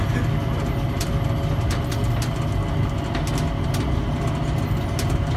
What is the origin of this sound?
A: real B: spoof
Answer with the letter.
A